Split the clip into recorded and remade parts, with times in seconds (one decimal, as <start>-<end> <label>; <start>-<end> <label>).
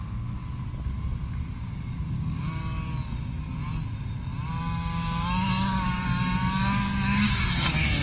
0.0-0.4 remade; 0.4-1.5 recorded; 1.5-2.6 remade; 2.6-4.6 recorded; 4.6-8.0 remade